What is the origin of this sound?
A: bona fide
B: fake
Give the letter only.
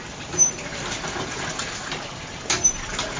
A